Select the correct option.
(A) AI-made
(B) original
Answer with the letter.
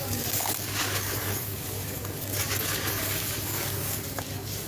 A